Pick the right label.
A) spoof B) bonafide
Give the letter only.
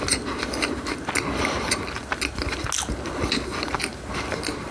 B